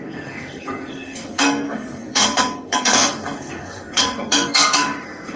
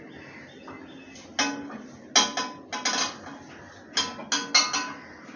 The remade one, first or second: first